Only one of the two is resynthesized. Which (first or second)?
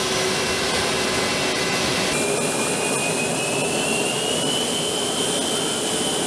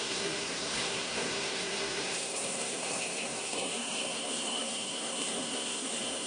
second